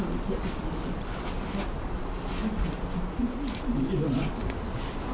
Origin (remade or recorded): recorded